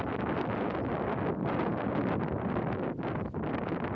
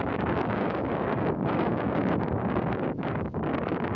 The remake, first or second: second